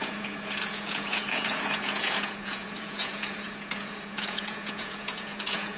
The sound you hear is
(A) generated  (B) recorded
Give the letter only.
A